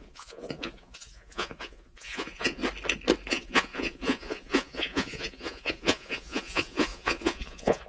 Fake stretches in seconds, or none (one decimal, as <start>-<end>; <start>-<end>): 0.0-2.6; 3.3-7.9